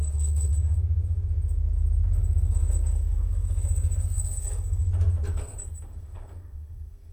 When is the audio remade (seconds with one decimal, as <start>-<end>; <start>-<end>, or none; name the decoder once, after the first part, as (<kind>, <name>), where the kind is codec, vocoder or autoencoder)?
0.0-0.5 (codec, SNAC); 2.2-4.8; 5.3-7.1